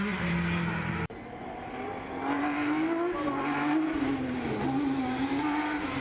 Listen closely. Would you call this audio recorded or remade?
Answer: recorded